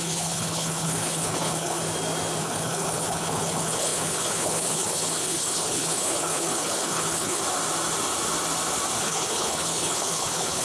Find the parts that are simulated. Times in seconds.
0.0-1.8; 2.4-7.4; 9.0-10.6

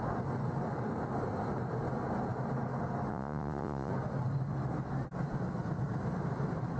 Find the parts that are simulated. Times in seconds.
3.1-3.9

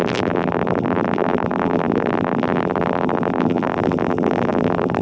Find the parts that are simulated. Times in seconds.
0.0-5.0

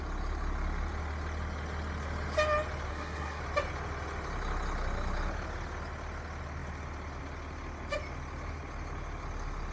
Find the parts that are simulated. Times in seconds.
2.9-3.4

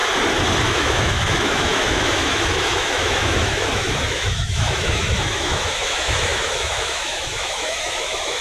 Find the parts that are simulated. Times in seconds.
0.6-8.4

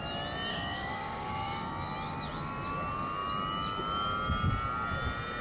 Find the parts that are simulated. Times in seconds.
0.5-1.7